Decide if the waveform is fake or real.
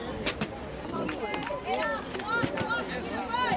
real